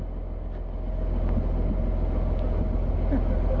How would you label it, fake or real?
real